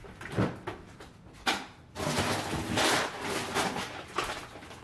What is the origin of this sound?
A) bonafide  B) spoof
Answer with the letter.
A